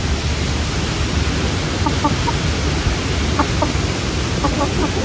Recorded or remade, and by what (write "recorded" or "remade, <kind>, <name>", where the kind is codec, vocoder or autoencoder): recorded